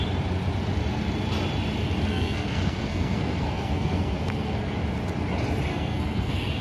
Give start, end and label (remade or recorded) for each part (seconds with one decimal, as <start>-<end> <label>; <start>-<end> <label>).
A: 0.0-2.1 recorded; 2.1-4.6 remade; 4.6-5.7 recorded; 5.7-6.6 remade